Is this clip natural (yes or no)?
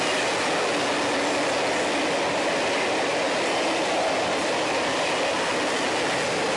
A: yes